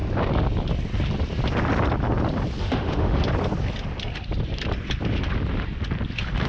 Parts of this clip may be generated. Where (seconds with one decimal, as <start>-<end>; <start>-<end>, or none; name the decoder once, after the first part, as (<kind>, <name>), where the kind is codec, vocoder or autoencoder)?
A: 2.6-3.2 (autoencoder, DAC-VAE)